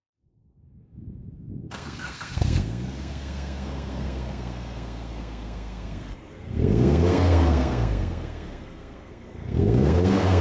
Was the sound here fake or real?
fake